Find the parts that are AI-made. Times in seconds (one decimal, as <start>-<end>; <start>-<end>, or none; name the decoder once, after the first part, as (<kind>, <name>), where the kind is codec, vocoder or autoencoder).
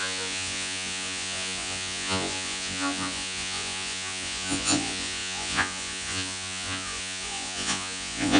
0.0-8.4 (vocoder, Vocos)